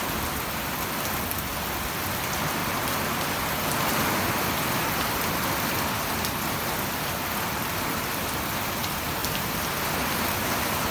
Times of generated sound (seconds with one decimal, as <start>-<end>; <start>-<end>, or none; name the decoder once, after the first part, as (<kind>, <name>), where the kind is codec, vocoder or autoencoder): none